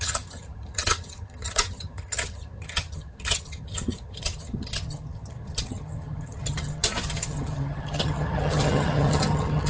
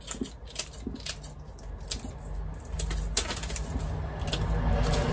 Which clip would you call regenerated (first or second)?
first